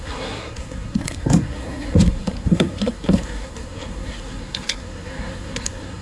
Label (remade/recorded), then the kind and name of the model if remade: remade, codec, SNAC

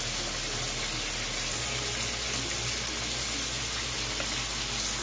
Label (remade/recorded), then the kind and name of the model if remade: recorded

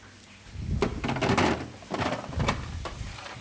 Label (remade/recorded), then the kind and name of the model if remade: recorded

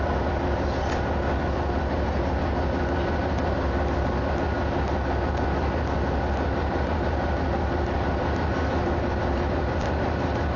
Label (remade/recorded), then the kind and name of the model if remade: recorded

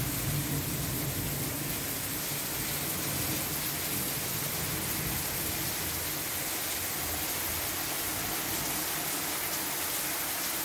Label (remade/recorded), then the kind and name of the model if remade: recorded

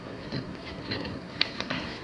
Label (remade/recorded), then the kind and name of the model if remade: remade, codec, SNAC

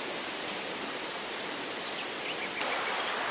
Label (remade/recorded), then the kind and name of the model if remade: recorded